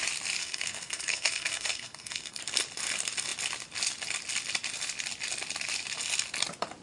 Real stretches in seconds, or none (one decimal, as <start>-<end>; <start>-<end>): 0.0-0.4; 2.4-6.8